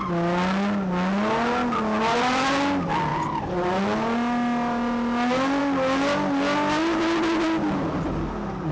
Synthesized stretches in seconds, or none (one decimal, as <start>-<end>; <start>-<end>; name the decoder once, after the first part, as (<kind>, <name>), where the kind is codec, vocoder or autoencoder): none